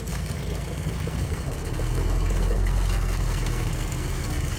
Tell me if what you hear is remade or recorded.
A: remade